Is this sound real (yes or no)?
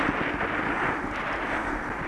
yes